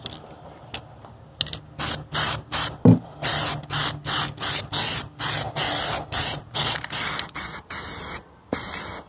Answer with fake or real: real